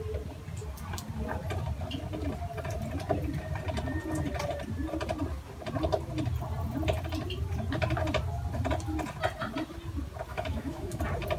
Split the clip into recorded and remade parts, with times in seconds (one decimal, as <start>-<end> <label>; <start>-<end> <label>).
0.0-10.3 recorded; 10.3-11.0 remade; 11.0-11.4 recorded